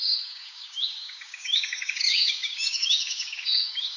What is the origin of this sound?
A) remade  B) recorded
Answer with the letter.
A